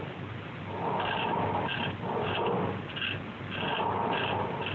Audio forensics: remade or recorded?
recorded